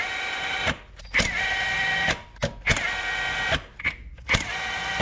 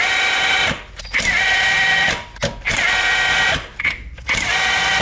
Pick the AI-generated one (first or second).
second